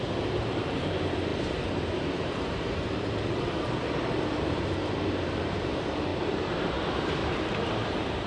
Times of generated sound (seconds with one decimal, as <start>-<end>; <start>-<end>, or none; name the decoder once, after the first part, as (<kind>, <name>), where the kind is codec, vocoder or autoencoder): 0.0-8.3 (vocoder, BigVGAN v2)